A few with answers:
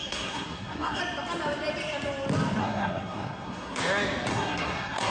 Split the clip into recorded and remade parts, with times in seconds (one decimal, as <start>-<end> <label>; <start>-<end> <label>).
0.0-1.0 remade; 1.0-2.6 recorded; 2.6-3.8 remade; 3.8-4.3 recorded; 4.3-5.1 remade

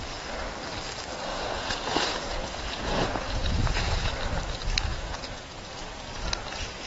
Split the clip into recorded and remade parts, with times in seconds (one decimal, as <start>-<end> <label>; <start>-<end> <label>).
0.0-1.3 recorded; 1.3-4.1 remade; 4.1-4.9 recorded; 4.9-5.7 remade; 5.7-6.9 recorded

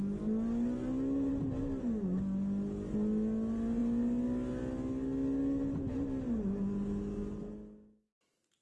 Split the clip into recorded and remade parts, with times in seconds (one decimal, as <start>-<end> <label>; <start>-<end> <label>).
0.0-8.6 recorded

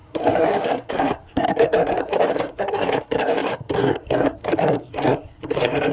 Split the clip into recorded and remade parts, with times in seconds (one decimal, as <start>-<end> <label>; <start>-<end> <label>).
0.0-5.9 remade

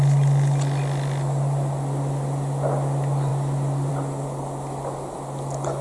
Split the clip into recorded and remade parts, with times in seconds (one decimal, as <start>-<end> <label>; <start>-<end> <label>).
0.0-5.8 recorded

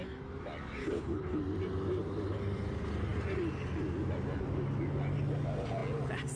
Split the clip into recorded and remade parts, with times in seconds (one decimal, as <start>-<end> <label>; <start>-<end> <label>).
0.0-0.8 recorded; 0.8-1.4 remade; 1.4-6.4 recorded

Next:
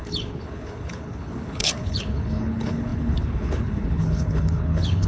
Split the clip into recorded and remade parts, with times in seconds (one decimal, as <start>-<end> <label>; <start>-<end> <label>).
0.0-5.1 remade